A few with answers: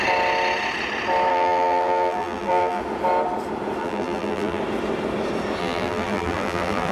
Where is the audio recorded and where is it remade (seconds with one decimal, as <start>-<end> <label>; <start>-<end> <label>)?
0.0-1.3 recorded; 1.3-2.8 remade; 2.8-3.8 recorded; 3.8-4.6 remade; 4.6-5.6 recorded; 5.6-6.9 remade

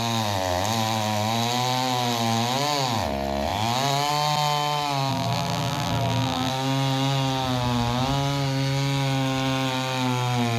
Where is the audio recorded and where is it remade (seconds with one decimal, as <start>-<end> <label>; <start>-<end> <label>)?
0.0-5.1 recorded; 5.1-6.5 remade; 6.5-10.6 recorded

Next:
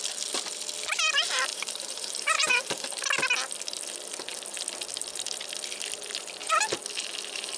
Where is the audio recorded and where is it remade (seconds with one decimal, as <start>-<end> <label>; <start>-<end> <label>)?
0.0-1.5 recorded; 1.5-3.0 remade; 3.0-7.6 recorded